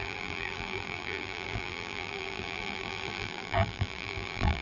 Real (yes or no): no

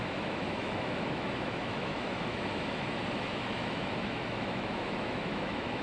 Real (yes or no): no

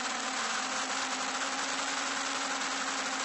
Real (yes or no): yes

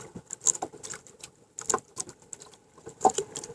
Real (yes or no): yes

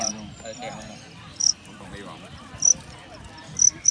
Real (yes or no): yes